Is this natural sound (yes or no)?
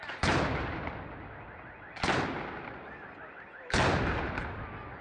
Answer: yes